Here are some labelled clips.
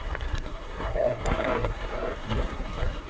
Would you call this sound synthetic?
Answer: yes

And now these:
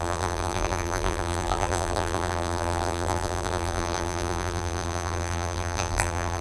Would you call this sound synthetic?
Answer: yes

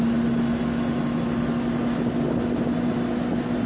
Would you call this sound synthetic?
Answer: no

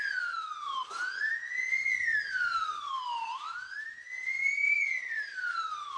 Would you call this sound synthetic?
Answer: no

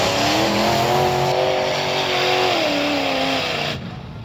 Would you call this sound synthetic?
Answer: no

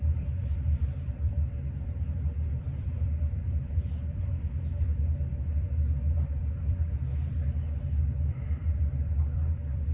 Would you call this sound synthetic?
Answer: yes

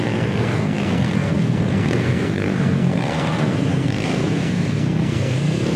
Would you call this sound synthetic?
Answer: yes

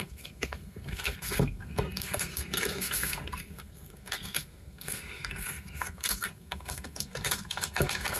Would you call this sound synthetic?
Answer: yes